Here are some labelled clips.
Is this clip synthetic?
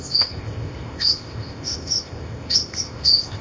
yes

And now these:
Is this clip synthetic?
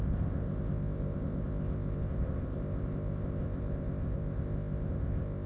yes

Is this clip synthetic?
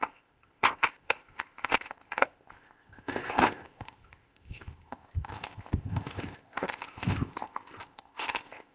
yes